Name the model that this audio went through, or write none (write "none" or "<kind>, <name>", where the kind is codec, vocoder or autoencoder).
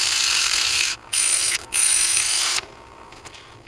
codec, SNAC